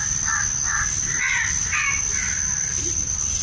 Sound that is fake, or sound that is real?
real